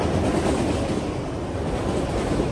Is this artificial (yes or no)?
no